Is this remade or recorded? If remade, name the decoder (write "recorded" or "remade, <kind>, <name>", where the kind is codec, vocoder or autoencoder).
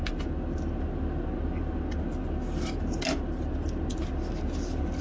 recorded